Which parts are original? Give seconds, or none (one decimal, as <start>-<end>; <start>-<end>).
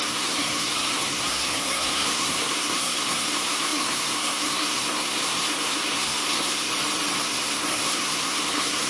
6.7-7.2